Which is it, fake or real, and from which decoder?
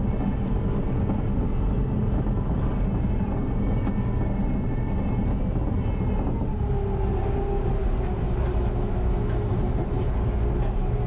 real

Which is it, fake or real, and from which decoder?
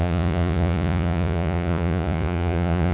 fake, vocoder, Vocos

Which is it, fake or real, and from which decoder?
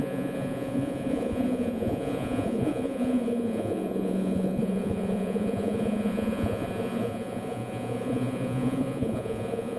fake, vocoder, Vocos